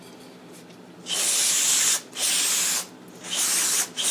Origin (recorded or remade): recorded